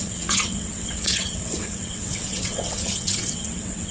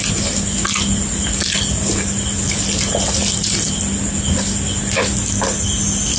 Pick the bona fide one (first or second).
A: second